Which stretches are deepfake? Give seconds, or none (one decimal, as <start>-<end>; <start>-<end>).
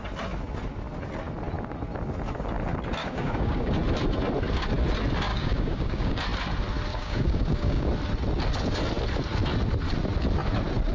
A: 3.0-3.7; 5.3-6.2; 6.9-7.9